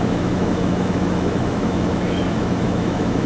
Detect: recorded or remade remade